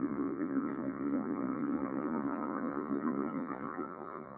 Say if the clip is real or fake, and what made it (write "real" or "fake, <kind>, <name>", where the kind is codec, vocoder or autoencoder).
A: fake, vocoder, Vocos